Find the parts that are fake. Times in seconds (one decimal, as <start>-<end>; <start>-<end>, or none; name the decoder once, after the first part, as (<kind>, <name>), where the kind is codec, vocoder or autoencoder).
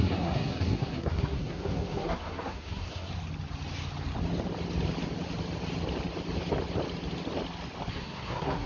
0.0-3.1 (codec, SNAC); 7.9-8.7